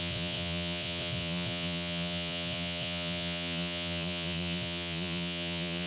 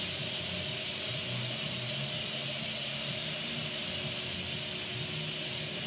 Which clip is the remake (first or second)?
first